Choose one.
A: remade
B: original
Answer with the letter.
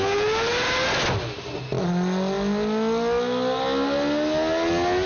B